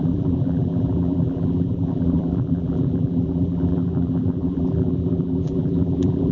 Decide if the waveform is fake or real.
fake